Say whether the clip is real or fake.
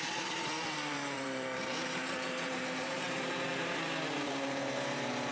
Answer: fake